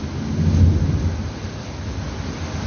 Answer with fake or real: real